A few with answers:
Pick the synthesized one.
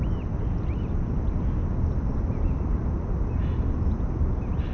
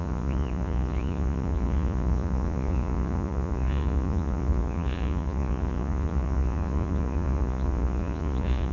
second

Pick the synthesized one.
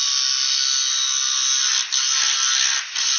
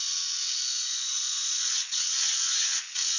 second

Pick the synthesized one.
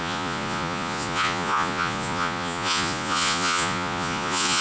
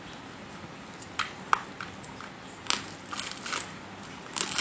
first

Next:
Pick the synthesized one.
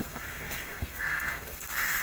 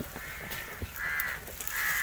first